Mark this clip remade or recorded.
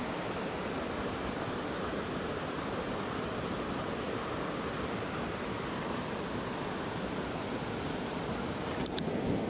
recorded